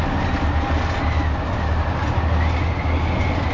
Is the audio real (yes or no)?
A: yes